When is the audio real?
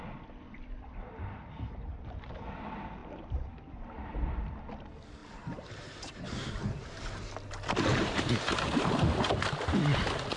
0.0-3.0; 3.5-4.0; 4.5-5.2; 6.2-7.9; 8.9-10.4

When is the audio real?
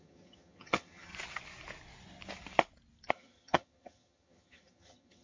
1.1-3.1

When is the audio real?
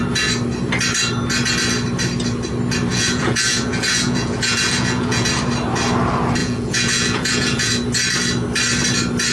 0.0-2.9; 5.3-6.4; 7.7-9.3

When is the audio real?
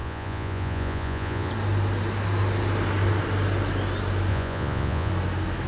1.5-4.3; 5.1-5.7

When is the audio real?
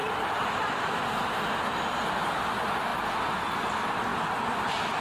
2.3-4.1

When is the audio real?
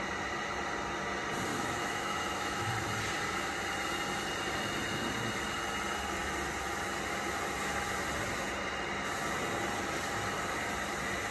0.0-1.5; 2.7-11.3